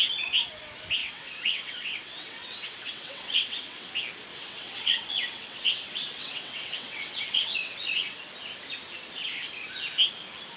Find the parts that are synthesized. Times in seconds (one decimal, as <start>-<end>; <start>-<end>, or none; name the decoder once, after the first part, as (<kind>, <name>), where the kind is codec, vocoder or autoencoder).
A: 1.0-3.9 (vocoder, WaveNeXt); 4.3-8.2